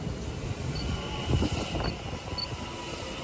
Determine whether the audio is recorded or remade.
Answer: recorded